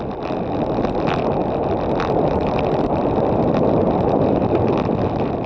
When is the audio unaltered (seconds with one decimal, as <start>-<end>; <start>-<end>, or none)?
0.0-1.4; 4.7-5.5